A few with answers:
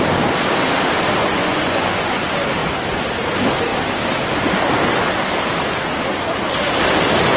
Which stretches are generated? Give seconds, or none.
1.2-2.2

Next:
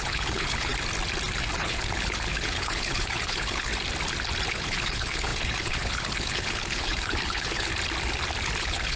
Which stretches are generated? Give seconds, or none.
0.0-0.7; 1.6-3.7; 4.5-7.7; 8.6-9.0